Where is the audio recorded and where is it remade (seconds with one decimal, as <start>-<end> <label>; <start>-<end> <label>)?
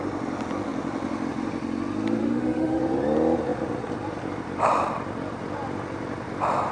0.0-2.2 recorded; 2.2-2.8 remade; 2.8-6.7 recorded